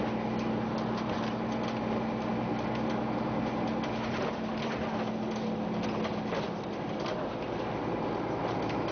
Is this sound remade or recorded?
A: recorded